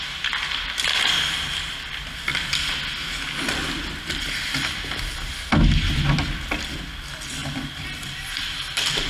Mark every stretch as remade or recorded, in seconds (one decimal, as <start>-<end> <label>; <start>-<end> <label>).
0.0-2.3 remade; 2.3-4.1 recorded; 4.1-9.1 remade